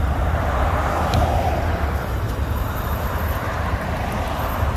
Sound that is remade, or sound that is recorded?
remade